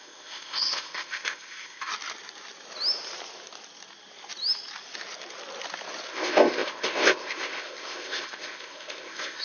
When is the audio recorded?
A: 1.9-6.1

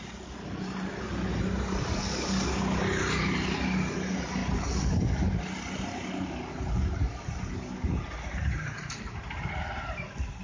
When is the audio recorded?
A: 0.0-10.4